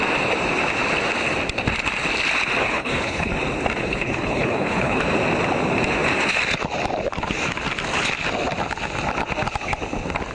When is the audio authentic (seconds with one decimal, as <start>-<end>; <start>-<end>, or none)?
0.0-2.6; 3.3-3.8; 5.0-10.3